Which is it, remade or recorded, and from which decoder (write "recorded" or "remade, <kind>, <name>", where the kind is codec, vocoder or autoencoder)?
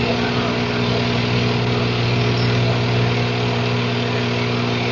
recorded